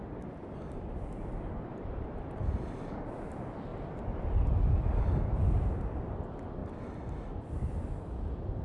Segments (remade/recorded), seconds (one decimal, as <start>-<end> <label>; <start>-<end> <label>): 0.0-1.7 recorded; 1.7-3.3 remade; 3.3-8.6 recorded